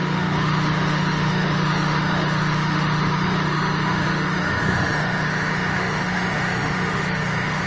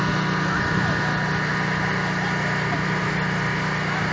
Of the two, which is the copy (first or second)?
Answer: first